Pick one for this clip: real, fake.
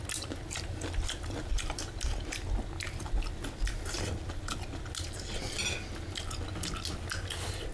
real